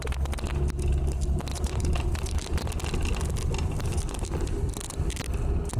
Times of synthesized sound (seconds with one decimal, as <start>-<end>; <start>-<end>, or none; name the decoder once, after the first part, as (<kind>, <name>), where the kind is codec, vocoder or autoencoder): 1.5-2.7 (vocoder, BigVGAN v2)